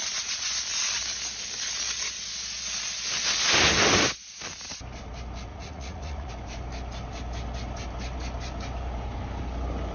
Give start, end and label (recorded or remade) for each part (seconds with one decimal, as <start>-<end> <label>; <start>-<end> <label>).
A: 0.0-5.5 recorded; 5.5-6.3 remade; 6.3-9.9 recorded